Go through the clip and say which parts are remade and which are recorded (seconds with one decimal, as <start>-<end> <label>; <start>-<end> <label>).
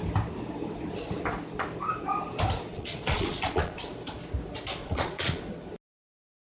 0.0-2.7 recorded; 2.7-3.9 remade; 3.9-4.8 recorded; 4.8-5.4 remade; 5.4-6.4 recorded